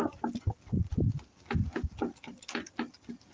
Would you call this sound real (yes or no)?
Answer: yes